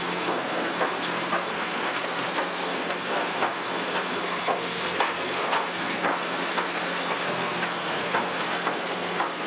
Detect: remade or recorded remade